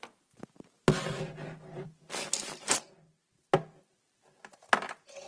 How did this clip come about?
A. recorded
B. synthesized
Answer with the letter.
A